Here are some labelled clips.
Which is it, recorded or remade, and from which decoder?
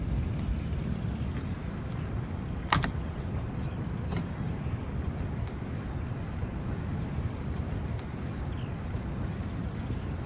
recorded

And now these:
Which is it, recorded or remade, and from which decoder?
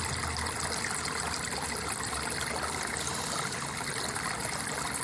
recorded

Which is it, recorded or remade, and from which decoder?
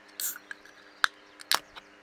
recorded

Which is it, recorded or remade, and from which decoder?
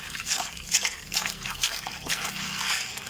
remade, codec, SNAC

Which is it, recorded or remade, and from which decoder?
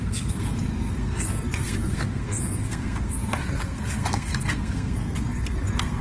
remade, codec, SNAC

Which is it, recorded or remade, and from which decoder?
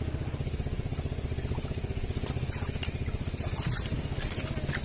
recorded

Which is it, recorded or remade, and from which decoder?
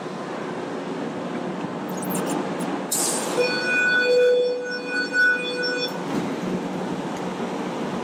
recorded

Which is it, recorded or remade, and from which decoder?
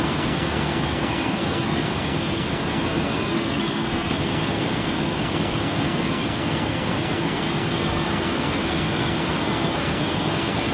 remade, codec, SNAC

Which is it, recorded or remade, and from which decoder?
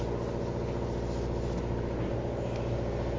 recorded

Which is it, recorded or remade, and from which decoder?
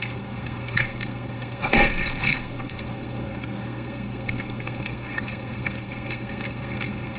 remade, codec, SNAC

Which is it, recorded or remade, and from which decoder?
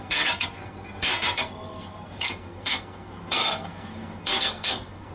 remade, codec, SNAC